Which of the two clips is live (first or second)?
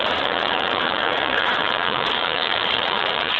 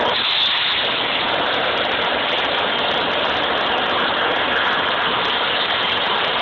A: second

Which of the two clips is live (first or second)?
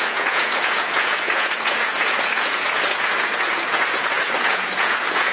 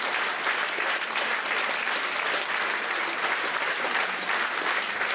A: second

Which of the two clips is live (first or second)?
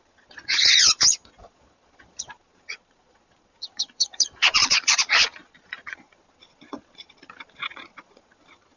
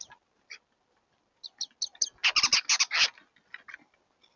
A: second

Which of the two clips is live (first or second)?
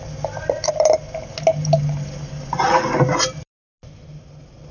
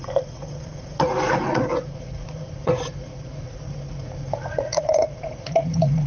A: first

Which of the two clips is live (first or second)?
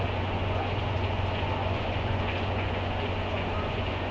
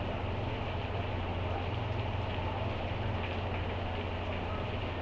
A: second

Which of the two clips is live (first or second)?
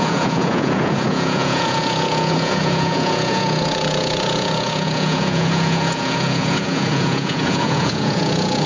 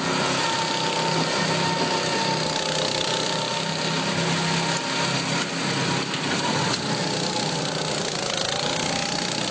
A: second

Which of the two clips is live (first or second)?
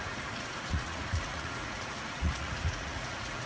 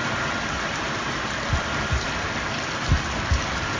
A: second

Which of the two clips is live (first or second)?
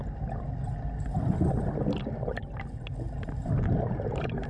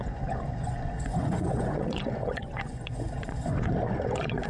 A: first